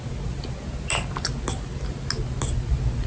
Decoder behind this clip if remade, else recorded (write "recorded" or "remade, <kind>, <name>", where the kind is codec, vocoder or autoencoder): recorded